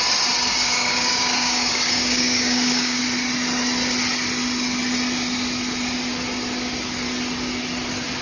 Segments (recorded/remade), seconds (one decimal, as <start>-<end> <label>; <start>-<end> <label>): 0.0-0.6 recorded; 0.6-3.0 remade; 3.0-8.2 recorded

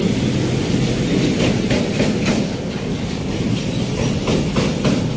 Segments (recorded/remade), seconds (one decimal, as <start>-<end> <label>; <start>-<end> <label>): 0.0-2.3 recorded; 2.3-3.3 remade; 3.3-5.2 recorded